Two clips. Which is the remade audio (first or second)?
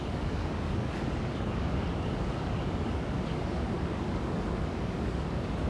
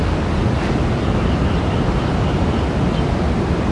first